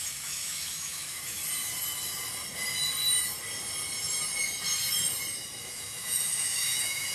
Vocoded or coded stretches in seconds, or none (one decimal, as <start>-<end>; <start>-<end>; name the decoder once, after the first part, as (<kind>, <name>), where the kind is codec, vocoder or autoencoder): 0.0-1.4 (autoencoder, DAC-VAE); 5.6-7.1